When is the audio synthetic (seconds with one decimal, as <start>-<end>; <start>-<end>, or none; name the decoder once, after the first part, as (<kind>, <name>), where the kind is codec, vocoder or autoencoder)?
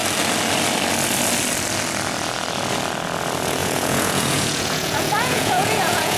3.6-6.2 (vocoder, Vocos)